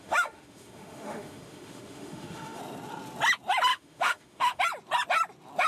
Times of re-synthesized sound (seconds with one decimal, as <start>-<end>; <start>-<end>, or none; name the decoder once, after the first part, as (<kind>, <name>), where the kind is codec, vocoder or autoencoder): 0.0-2.6 (autoencoder, DAC-VAE); 3.7-4.6